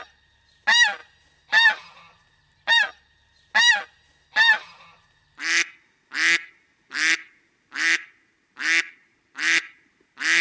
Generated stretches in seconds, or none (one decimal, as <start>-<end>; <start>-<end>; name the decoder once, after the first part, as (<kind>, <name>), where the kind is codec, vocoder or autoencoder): none